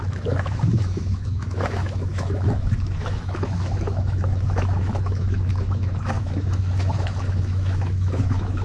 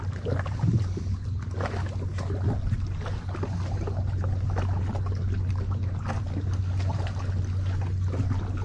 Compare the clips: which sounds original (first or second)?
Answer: second